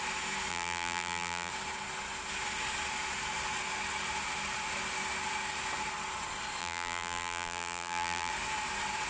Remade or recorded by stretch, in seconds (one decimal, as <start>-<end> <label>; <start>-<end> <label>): 0.0-0.5 recorded; 0.5-1.5 remade; 1.5-6.6 recorded; 6.6-8.3 remade; 8.3-9.1 recorded